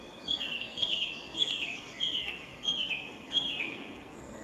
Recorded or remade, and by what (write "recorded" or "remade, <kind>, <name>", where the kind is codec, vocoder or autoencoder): remade, codec, SNAC